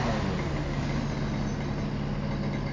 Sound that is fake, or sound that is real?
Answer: real